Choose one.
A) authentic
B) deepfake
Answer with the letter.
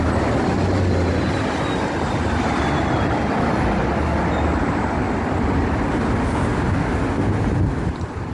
A